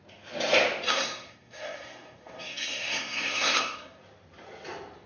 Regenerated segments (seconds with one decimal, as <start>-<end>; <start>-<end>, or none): 0.9-4.0